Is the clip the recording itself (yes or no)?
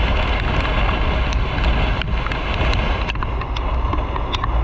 yes